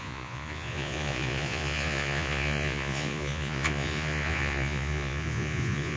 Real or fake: fake